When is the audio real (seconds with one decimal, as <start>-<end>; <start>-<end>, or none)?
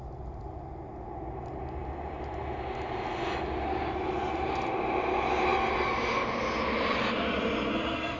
0.0-8.2